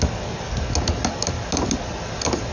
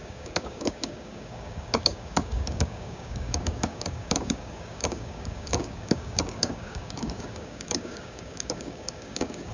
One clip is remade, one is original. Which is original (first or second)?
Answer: first